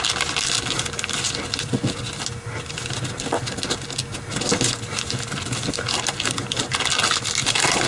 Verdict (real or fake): real